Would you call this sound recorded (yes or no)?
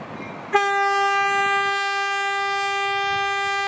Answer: yes